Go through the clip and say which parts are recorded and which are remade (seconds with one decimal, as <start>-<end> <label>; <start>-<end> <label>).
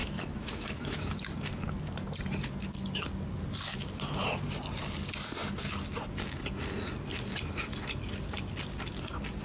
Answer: 0.0-1.1 remade; 1.1-9.4 recorded